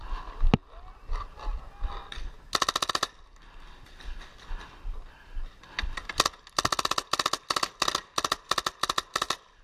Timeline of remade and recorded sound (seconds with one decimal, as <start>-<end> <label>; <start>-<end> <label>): 0.0-9.6 recorded